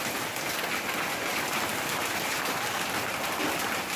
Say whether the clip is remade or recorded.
recorded